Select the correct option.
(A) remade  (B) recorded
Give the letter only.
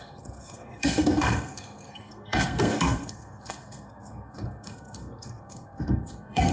A